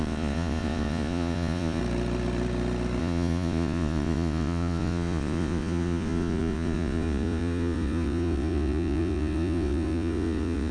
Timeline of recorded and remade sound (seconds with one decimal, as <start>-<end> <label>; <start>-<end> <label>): 0.0-1.8 remade; 1.8-3.0 recorded; 3.0-10.7 remade